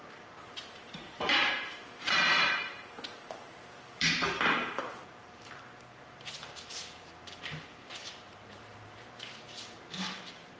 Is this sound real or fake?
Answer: fake